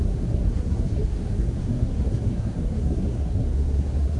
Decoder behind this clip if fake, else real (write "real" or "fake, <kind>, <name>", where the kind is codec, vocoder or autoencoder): fake, codec, SNAC